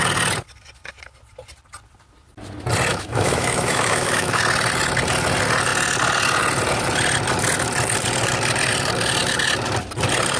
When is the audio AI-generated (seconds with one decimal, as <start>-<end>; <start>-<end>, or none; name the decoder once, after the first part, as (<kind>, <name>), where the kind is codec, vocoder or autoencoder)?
2.9-4.4 (autoencoder, DAC-VAE)